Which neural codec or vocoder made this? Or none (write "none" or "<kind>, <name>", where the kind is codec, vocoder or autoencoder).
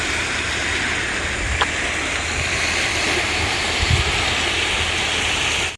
none